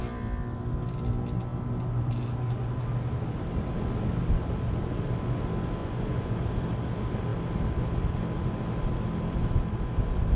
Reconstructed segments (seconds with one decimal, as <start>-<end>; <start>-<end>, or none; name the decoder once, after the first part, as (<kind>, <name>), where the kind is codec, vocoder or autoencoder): 5.8-6.4 (vocoder, Vocos)